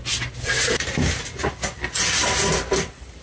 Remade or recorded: recorded